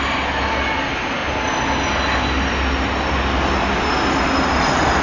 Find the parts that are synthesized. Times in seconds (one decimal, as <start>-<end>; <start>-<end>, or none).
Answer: none